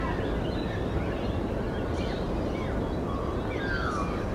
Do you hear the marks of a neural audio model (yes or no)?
no